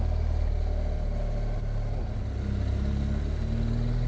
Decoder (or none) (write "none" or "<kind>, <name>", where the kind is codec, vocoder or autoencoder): none